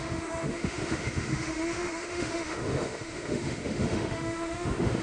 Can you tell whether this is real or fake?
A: fake